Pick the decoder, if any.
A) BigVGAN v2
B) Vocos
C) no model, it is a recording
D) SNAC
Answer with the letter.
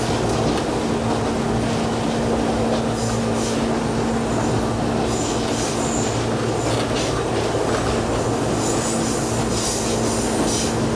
C